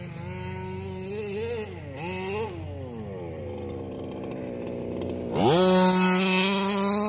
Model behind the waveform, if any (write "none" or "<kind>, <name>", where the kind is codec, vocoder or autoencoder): none